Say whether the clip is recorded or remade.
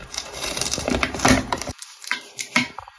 remade